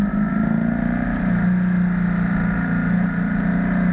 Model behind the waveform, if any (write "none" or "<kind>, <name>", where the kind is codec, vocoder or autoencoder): none